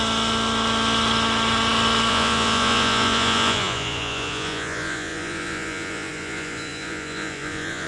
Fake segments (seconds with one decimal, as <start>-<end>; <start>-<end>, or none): 2.1-7.9